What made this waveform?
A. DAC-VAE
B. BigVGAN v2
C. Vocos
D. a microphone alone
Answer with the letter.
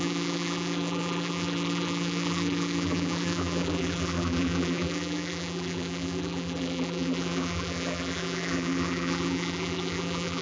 B